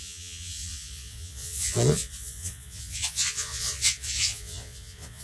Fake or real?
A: fake